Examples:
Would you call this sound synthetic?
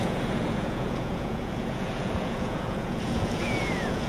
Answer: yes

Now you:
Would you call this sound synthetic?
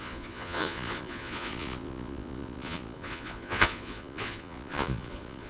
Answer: yes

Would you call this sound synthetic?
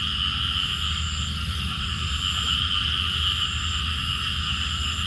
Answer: no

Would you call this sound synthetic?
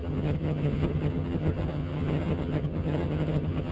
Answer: yes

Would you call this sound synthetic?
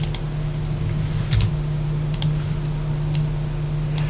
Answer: no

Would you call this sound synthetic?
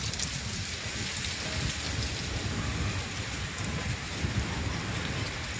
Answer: no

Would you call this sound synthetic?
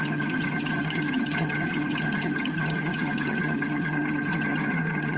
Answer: yes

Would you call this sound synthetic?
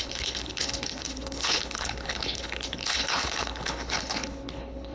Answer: yes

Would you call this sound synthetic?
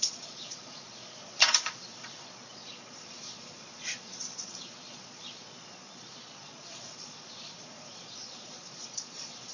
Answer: yes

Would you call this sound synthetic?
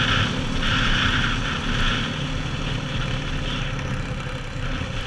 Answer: no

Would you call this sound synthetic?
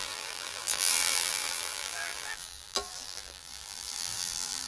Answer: yes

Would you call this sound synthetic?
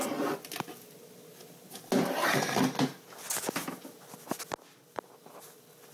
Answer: no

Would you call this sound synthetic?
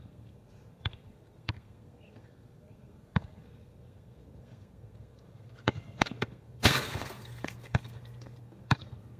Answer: yes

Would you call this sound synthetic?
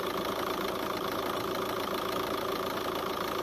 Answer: yes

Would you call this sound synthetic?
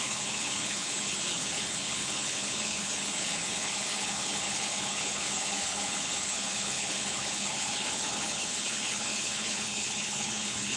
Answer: yes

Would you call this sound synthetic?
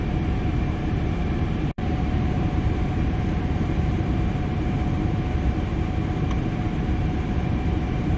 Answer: yes